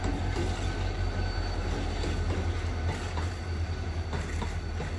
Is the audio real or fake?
real